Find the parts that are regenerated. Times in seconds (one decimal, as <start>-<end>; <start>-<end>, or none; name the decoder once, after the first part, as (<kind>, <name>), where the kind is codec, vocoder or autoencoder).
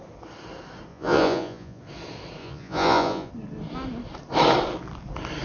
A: 0.9-1.8 (vocoder, Vocos); 2.4-3.3